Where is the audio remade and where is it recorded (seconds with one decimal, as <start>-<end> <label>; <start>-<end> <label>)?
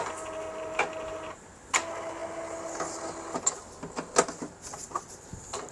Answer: 0.0-5.7 recorded